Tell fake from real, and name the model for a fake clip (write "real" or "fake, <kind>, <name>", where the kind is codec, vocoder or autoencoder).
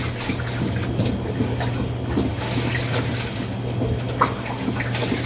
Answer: real